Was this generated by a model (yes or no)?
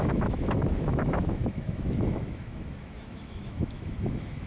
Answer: yes